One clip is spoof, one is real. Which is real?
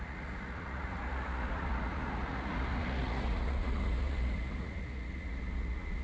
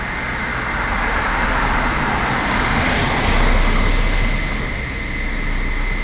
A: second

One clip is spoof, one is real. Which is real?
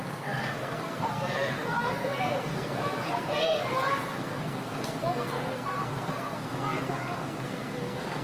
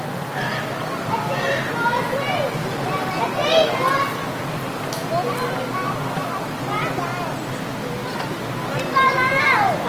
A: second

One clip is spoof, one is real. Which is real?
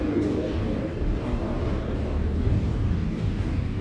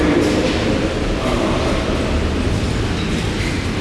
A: second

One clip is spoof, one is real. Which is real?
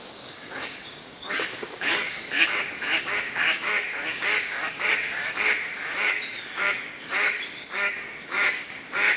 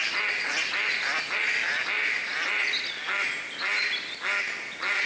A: second